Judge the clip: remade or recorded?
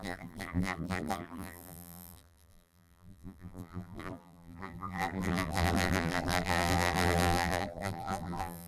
remade